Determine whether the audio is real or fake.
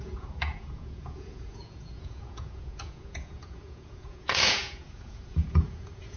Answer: fake